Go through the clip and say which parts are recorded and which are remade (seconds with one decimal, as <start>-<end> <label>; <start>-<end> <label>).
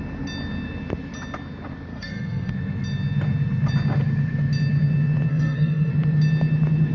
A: 0.0-1.9 recorded; 1.9-2.5 remade; 2.5-5.3 recorded; 5.3-5.9 remade; 5.9-6.9 recorded